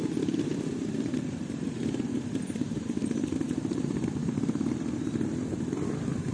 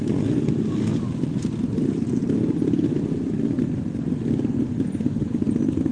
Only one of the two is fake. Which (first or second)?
first